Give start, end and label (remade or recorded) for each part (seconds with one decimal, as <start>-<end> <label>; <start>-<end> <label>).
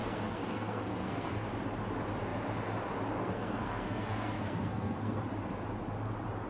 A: 0.0-1.5 remade; 1.5-3.2 recorded; 3.2-5.2 remade; 5.2-6.5 recorded